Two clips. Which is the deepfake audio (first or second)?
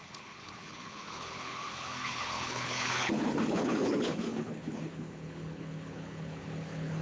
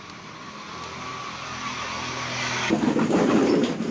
first